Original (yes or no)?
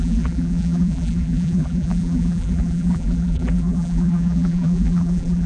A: no